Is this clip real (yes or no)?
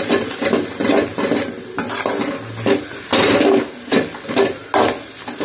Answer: yes